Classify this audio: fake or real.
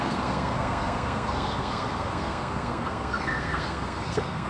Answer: fake